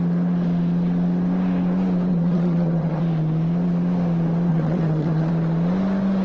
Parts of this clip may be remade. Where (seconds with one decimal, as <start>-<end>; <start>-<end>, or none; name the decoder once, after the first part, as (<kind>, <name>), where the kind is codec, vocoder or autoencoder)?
2.1-3.0 (vocoder, HiFi-GAN); 4.5-5.3